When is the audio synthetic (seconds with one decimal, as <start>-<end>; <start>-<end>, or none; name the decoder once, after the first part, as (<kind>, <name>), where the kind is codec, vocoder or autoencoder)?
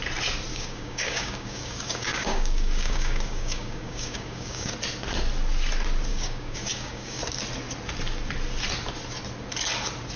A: 0.5-4.7 (codec, DAC); 6.1-7.2